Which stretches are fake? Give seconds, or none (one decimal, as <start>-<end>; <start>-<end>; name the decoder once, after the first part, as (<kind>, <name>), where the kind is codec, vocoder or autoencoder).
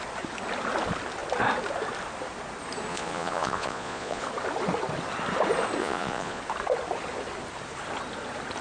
2.9-4.2 (vocoder, Vocos); 5.8-6.4